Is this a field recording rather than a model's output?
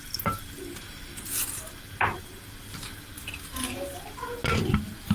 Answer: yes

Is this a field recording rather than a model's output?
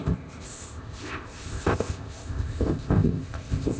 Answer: no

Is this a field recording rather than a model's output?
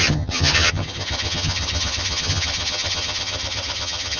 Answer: no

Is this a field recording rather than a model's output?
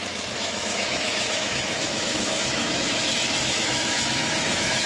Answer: no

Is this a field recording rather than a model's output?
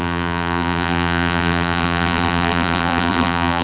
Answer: no